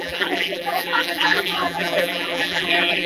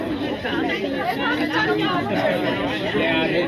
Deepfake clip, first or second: first